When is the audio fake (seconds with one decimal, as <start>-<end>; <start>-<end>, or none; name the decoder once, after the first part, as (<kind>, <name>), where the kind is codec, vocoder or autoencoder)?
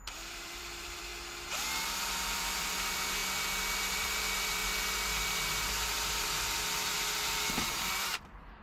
0.0-1.1 (vocoder, BigVGAN v2); 1.8-3.2; 3.8-4.6; 8.0-8.6